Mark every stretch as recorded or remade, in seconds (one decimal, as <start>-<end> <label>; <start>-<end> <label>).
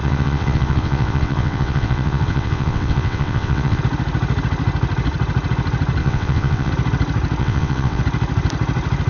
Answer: 0.0-3.8 remade; 3.8-6.0 recorded; 6.0-6.7 remade; 6.7-7.4 recorded; 7.4-8.0 remade; 8.0-9.1 recorded